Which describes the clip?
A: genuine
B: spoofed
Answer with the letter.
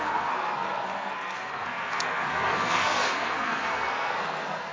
B